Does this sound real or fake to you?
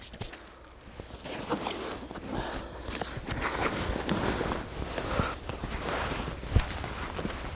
real